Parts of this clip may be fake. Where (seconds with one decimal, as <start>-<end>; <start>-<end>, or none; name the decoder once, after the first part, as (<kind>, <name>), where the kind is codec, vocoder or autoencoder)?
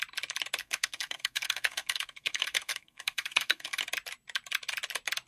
0.6-3.8 (codec, SNAC)